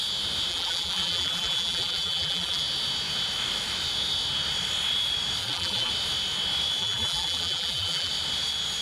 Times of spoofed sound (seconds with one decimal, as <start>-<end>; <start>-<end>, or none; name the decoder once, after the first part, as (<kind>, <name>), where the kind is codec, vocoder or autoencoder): 0.5-2.6 (vocoder, BigVGAN v2); 5.4-5.9; 6.8-8.1